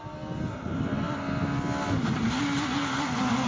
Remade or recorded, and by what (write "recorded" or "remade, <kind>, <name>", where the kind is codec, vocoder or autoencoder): recorded